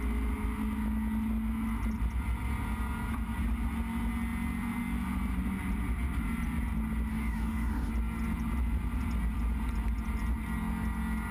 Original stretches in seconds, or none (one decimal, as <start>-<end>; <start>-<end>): 0.0-7.1; 7.9-11.3